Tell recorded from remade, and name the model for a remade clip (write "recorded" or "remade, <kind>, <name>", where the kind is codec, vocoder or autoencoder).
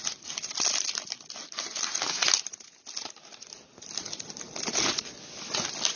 recorded